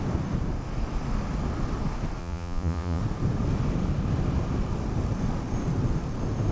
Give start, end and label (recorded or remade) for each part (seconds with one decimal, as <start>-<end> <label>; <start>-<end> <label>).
0.0-2.2 recorded; 2.2-3.0 remade; 3.0-6.5 recorded